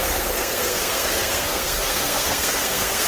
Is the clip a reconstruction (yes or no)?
yes